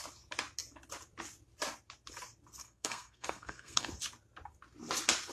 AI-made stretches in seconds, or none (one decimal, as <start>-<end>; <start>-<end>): 2.6-3.9

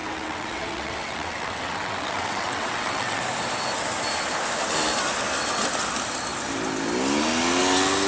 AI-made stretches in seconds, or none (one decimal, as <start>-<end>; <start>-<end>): 0.0-3.2